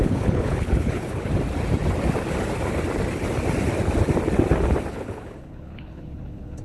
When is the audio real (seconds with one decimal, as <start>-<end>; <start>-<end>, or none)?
1.3-4.9